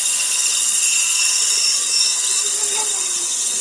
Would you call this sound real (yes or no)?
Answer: no